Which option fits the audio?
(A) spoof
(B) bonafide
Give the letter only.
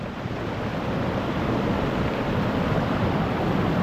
A